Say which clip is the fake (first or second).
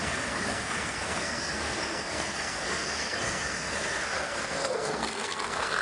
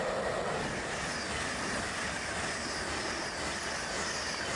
first